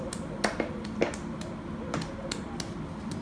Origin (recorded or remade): recorded